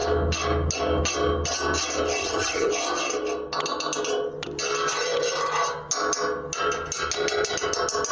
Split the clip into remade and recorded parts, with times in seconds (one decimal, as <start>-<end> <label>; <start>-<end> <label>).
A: 0.0-2.2 recorded; 2.2-2.7 remade; 2.7-8.1 recorded